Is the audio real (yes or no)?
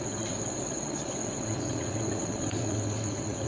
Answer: no